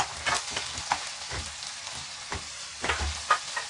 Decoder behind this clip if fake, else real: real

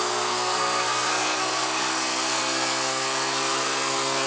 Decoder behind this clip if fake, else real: fake, codec, SNAC